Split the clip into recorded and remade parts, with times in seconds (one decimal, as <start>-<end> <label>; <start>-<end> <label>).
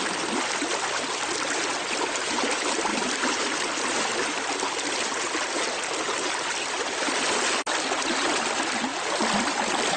0.0-2.9 recorded; 2.9-7.1 remade; 7.1-8.9 recorded; 8.9-9.5 remade; 9.5-10.0 recorded